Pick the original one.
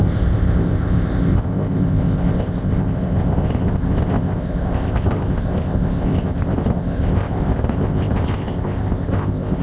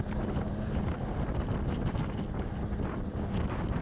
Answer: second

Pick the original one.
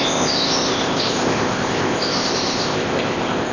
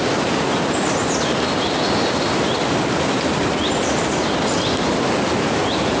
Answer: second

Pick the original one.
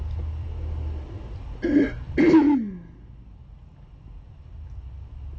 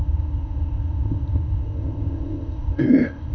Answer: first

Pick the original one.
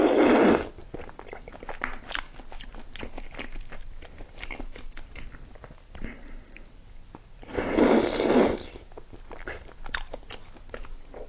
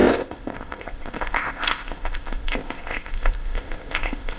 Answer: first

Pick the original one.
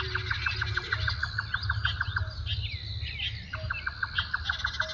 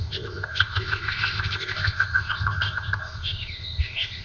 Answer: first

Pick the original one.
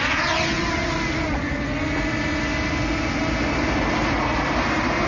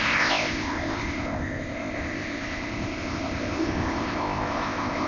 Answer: first